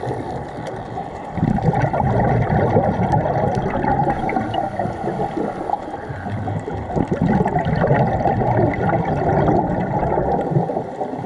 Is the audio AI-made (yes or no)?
yes